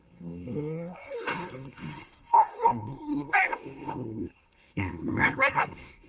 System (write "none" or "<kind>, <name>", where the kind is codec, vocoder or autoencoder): codec, SNAC